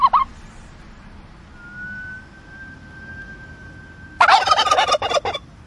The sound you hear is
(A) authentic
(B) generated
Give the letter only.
A